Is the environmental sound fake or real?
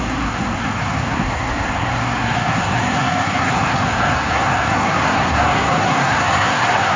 fake